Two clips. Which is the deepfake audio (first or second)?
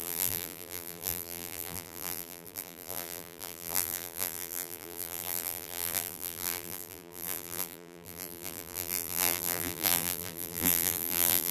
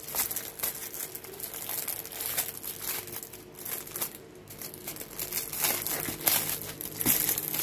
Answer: first